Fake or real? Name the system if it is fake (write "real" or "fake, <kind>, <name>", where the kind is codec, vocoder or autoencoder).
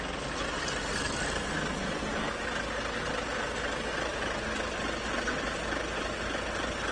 real